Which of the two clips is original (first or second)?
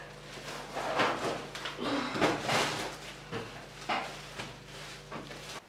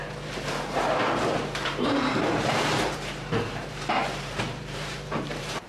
first